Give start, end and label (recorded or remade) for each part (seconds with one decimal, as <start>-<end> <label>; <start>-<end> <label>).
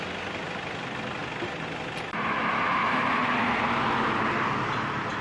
0.0-5.2 recorded